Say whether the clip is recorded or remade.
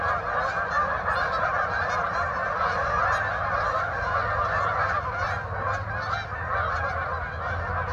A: recorded